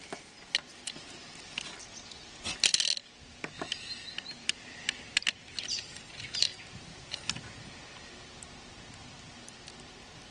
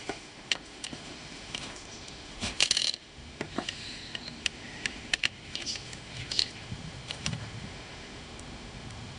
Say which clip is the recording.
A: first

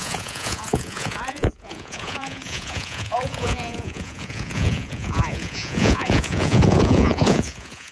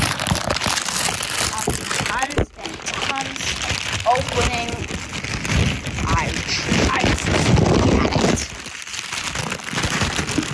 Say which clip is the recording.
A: second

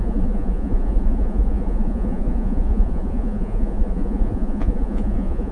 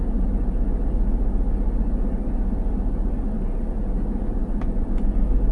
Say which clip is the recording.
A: second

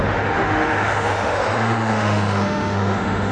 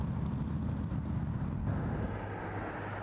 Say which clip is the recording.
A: second